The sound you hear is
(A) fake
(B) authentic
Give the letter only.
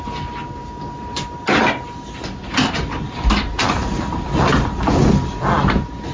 B